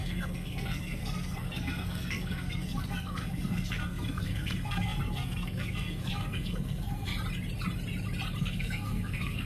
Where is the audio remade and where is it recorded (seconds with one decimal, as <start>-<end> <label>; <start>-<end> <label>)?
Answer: 0.0-7.1 remade; 7.1-8.4 recorded; 8.4-9.5 remade